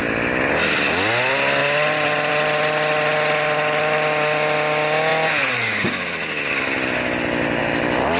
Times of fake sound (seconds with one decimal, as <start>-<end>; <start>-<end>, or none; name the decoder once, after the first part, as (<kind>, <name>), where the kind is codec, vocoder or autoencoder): none